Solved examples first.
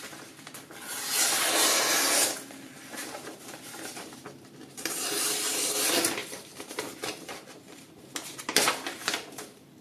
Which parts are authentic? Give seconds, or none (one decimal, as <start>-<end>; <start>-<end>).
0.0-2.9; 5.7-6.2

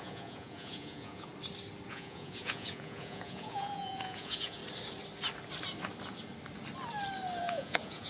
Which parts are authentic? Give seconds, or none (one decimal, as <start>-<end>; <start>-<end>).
1.3-1.9; 4.6-7.4

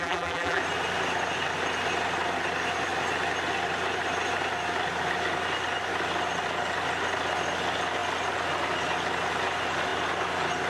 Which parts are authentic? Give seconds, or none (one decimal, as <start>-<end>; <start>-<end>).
0.6-10.7